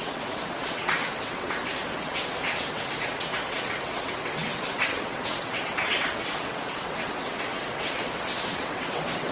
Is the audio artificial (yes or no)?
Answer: yes